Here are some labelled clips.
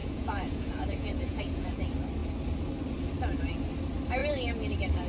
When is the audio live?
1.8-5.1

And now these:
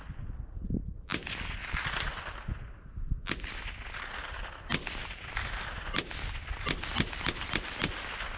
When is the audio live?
0.0-8.4

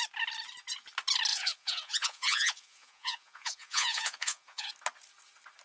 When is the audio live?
0.0-1.3; 4.7-5.6

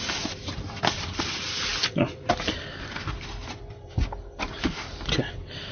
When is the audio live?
0.0-5.7

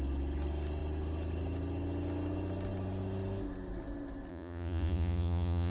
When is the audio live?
0.0-4.3